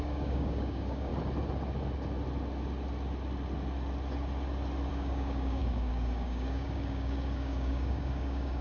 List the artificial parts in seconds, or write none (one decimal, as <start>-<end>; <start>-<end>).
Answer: 0.0-1.1; 4.9-8.6